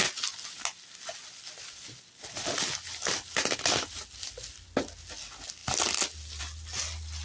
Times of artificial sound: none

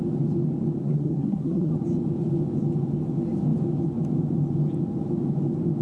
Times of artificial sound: 0.8-1.7 (codec, SNAC)

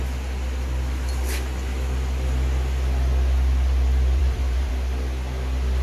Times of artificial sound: 4.2-4.7 (vocoder, BigVGAN v2)

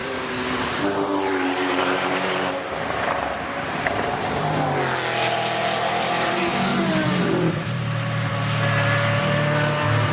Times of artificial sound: 0.0-4.4 (vocoder, BigVGAN v2); 6.7-8.3

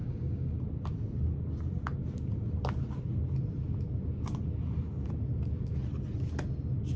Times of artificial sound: 0.0-0.6 (codec, DAC)

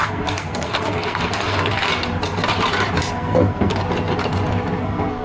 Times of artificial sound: 0.0-1.9 (codec, SNAC); 3.1-3.8; 4.8-5.2

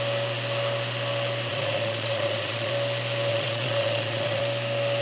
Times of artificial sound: 1.5-2.7 (vocoder, Vocos); 3.3-4.4

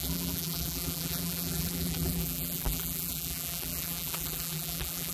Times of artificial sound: 0.0-5.1 (vocoder, BigVGAN v2)